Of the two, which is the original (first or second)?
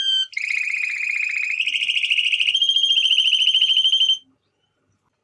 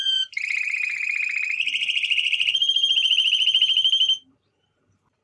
first